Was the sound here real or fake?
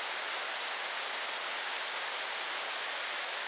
real